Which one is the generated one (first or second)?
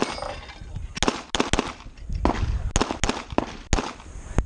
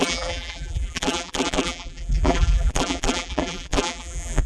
second